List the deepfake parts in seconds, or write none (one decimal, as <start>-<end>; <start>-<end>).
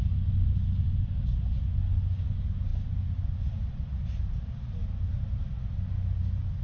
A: none